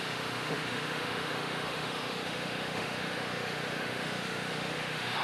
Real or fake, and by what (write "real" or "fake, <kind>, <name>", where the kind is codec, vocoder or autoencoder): fake, autoencoder, DAC-VAE